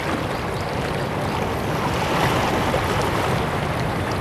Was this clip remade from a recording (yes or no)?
no